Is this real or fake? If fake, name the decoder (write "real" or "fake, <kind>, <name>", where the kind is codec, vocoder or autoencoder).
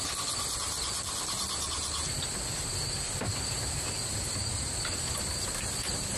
real